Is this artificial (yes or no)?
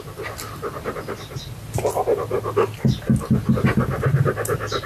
no